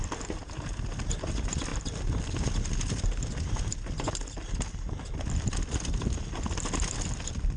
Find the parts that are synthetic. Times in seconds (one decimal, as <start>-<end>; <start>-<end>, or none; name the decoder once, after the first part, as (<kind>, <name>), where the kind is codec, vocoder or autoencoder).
none

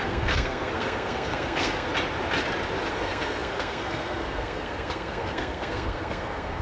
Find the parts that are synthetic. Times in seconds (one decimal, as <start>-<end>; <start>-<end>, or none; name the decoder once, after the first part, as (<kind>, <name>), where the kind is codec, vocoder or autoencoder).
0.0-1.9 (codec, SNAC); 2.9-6.6